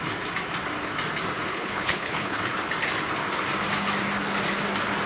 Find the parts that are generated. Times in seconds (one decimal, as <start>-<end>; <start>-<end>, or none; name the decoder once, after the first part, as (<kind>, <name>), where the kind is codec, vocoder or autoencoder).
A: 1.5-2.4 (codec, HILCodec)